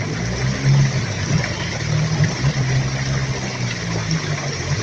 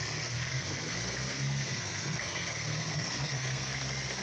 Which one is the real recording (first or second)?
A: first